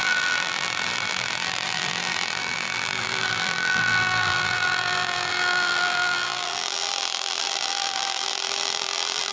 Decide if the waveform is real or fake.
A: fake